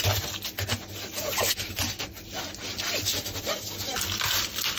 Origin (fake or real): real